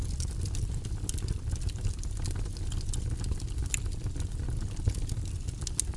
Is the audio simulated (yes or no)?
no